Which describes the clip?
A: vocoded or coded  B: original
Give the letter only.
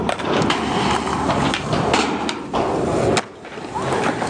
B